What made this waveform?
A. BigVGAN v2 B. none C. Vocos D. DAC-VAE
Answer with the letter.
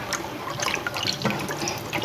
B